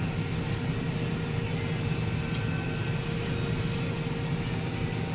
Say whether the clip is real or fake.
real